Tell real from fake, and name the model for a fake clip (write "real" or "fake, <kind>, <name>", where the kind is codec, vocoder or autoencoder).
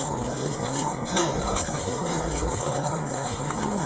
fake, codec, SNAC